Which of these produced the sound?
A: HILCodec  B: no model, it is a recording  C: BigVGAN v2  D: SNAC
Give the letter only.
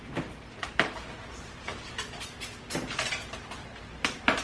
B